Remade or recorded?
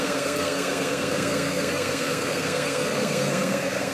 remade